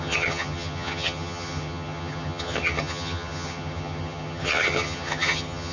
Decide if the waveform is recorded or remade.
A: remade